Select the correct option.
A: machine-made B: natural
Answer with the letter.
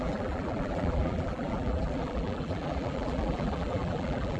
A